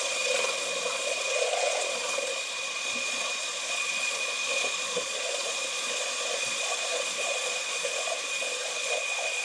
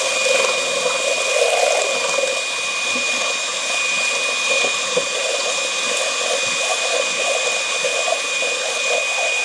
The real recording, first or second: second